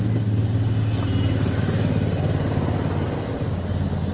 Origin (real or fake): real